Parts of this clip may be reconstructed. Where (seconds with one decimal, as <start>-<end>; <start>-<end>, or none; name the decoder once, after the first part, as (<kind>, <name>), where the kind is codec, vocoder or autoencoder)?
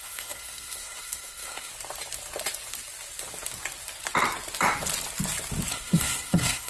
0.0-1.7 (codec, SNAC); 5.7-6.7